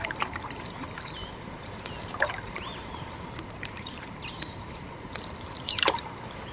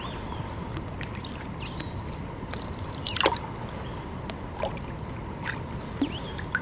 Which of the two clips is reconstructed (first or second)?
first